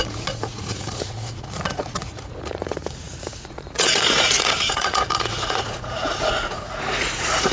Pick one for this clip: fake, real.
fake